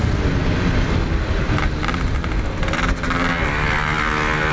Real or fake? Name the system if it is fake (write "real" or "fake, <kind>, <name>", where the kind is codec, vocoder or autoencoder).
real